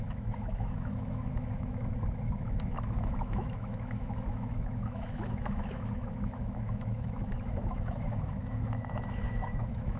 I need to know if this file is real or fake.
fake